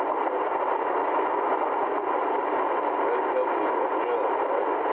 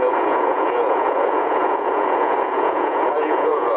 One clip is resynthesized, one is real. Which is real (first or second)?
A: first